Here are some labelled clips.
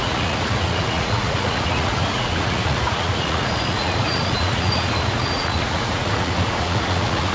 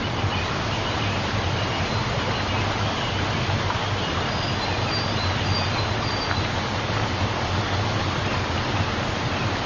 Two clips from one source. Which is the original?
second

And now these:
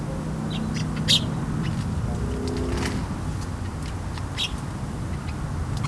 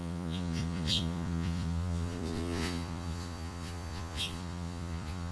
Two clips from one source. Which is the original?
first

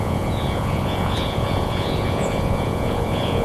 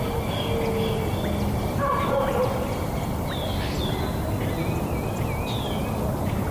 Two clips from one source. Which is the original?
second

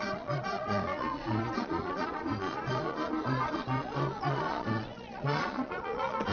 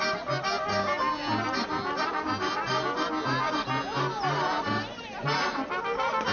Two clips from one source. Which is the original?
second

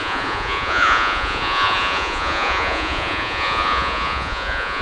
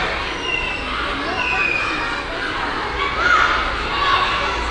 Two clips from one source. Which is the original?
second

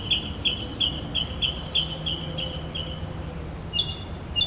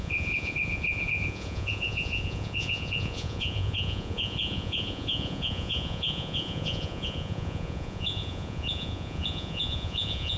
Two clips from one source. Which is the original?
first